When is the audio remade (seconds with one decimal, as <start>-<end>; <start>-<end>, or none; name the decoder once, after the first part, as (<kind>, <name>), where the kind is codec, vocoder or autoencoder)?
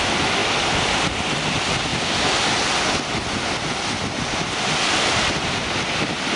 0.0-1.9 (vocoder, BigVGAN v2); 5.7-6.4